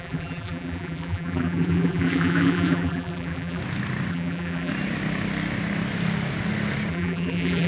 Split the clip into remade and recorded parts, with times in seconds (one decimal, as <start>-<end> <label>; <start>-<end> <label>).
0.0-3.6 remade; 3.6-4.1 recorded; 4.1-4.7 remade; 4.7-6.9 recorded; 6.9-7.7 remade